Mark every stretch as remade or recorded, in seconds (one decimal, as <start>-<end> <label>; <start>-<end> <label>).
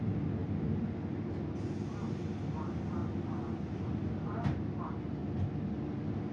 0.0-6.3 recorded